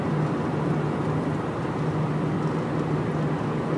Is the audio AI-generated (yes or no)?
no